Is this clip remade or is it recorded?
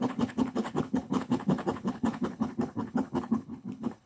remade